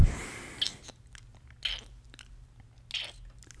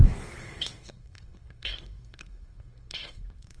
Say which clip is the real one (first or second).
first